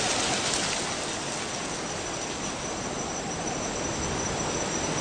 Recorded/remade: recorded